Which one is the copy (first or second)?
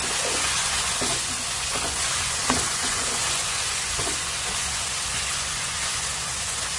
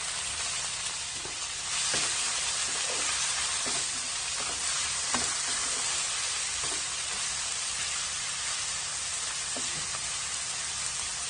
first